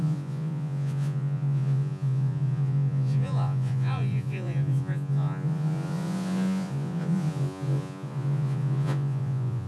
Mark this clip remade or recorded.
remade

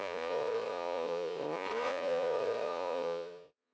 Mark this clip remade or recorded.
remade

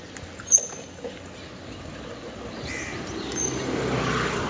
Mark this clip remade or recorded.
recorded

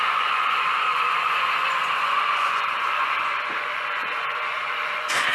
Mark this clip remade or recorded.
remade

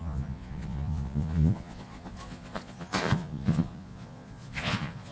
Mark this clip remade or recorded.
remade